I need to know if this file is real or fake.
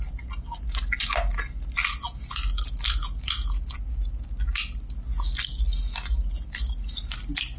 real